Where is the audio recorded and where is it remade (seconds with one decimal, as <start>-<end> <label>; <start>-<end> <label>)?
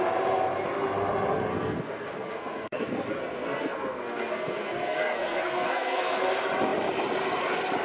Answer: 0.0-1.5 recorded; 1.5-6.2 remade; 6.2-7.8 recorded